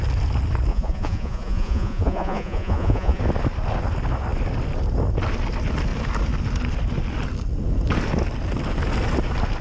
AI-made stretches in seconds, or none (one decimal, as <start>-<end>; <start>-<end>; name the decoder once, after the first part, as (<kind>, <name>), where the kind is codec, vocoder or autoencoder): 0.7-3.2 (vocoder, Vocos)